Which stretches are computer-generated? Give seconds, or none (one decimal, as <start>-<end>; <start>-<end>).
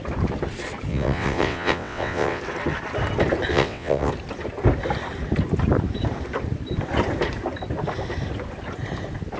0.9-2.4; 3.5-4.1